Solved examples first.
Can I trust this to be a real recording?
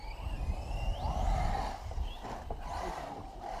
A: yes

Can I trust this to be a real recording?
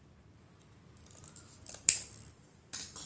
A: no